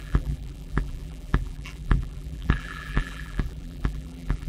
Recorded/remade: remade